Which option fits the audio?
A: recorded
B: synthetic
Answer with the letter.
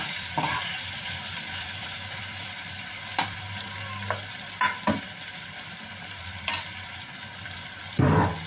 B